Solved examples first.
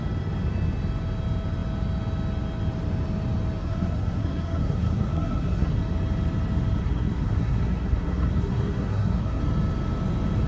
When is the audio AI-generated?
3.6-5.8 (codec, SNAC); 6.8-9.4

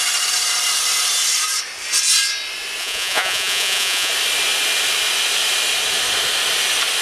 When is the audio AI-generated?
2.8-4.1 (vocoder, Vocos)

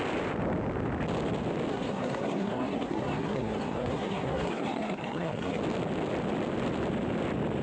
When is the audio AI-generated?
1.7-5.6 (codec, SNAC)

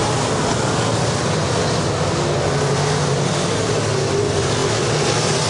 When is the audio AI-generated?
none

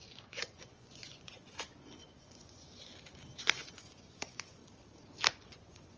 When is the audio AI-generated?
0.0-2.9 (vocoder, Vocos); 3.4-4.6; 5.3-6.0

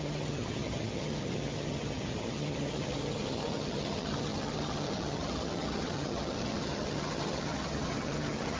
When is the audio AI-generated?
0.0-8.6 (vocoder, HiFi-GAN)